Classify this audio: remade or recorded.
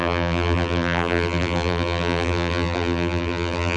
remade